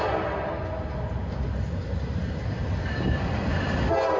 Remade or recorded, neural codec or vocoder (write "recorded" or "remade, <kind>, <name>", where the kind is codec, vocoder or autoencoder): recorded